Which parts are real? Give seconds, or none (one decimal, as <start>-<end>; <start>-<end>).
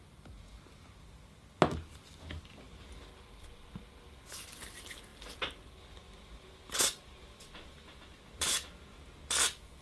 0.0-9.8